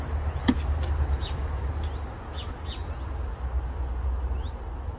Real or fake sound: real